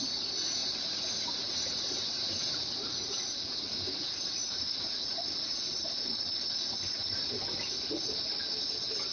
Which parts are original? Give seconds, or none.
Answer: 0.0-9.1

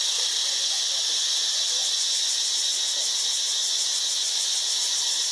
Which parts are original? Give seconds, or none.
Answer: 0.0-0.4; 0.9-1.8; 2.5-3.6; 4.8-5.3

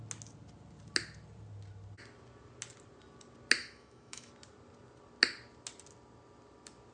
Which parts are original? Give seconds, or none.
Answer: 0.0-3.6; 4.3-6.9